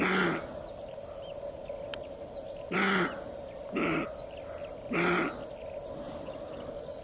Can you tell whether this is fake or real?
real